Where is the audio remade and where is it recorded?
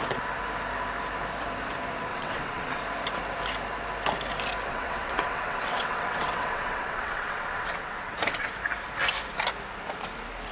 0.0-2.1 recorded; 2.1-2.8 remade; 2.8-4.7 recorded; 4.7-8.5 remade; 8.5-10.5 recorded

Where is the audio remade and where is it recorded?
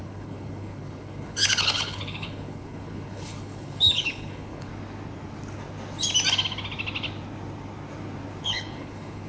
0.0-4.7 remade; 4.7-8.4 recorded; 8.4-9.3 remade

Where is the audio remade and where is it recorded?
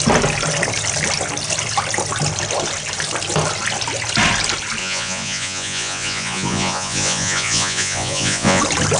0.0-4.8 recorded; 4.8-8.6 remade; 8.6-9.0 recorded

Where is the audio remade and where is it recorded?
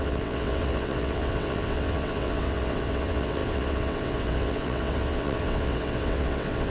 0.0-6.7 remade